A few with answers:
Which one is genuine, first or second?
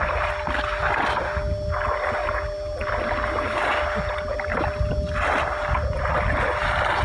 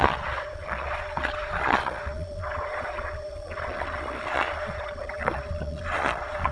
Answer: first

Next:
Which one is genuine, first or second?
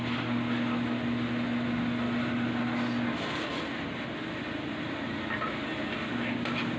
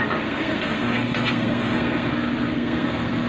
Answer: first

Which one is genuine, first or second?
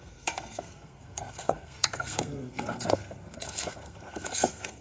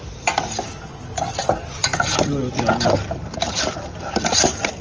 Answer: second